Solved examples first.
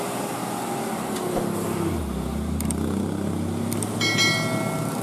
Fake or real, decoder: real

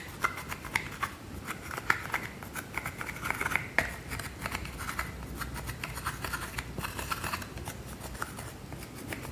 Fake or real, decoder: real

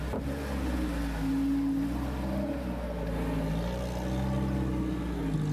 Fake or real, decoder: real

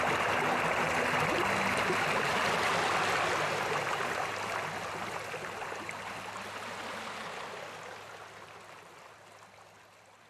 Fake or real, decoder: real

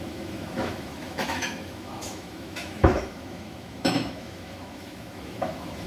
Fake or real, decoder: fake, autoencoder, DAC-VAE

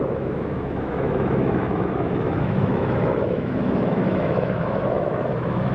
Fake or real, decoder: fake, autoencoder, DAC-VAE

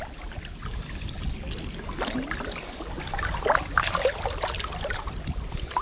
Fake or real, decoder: real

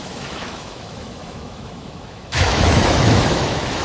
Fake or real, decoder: fake, autoencoder, DAC-VAE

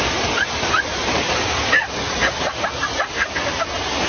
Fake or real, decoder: real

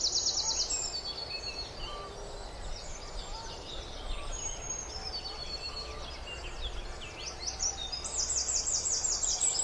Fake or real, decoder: real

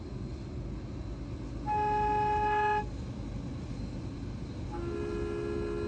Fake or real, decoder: real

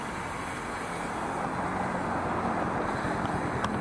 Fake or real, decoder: real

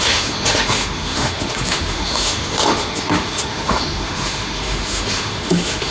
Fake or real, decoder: fake, autoencoder, DAC-VAE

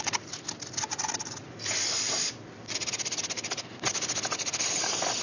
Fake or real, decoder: real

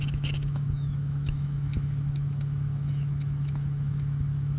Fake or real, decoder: fake, autoencoder, DAC-VAE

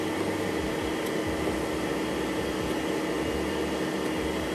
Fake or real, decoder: real